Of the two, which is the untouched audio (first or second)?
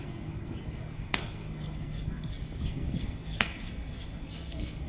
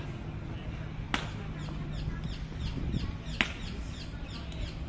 second